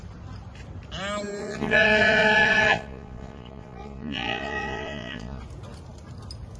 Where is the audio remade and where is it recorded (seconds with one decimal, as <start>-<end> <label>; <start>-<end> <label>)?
0.0-1.4 recorded; 1.4-5.4 remade; 5.4-6.6 recorded